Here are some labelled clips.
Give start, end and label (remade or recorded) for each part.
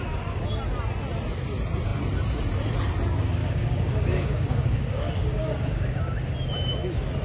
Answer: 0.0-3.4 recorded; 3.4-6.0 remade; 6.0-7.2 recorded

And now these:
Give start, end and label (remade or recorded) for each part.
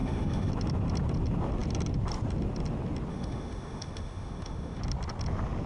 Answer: 0.0-0.5 remade; 0.5-3.1 recorded; 3.1-4.8 remade; 4.8-5.7 recorded